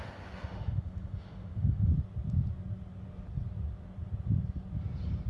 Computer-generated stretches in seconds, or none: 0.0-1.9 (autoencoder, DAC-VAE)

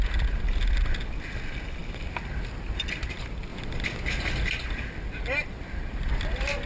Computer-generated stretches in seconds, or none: none

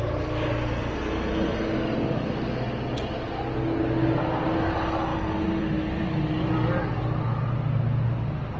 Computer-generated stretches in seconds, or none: none

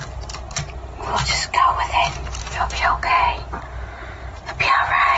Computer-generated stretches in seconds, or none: 2.4-3.2 (autoencoder, DAC-VAE)